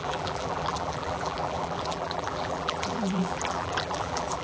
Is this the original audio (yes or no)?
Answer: no